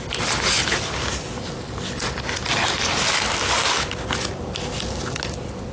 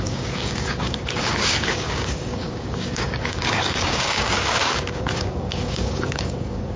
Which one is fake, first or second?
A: second